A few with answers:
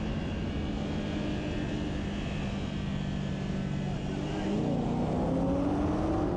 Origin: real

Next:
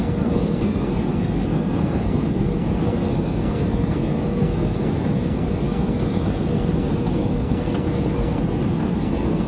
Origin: fake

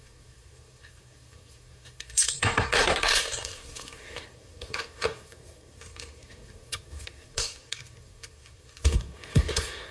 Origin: fake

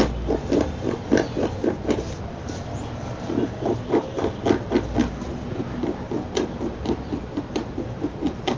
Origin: real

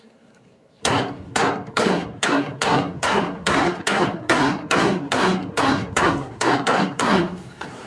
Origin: fake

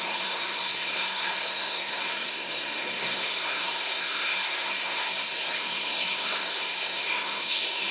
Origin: fake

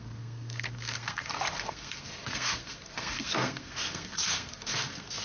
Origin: fake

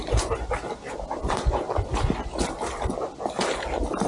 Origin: real